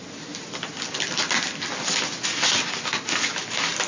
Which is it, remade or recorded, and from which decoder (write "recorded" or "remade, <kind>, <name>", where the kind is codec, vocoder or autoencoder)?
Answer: recorded